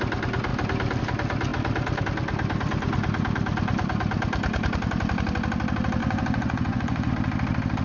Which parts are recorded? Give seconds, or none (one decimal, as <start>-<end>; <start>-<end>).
0.0-6.0; 7.1-7.8